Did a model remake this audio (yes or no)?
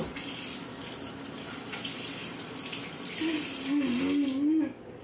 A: yes